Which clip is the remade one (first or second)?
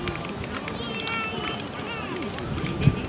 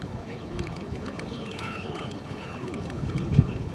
second